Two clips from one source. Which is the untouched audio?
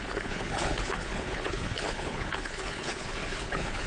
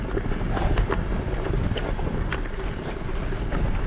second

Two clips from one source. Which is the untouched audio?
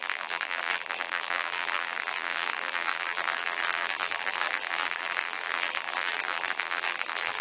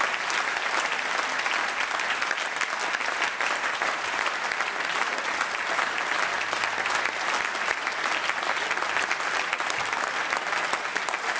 second